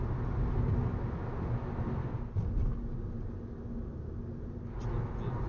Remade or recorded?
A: recorded